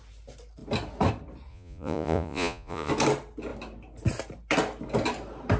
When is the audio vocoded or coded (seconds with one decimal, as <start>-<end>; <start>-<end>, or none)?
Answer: 1.5-2.9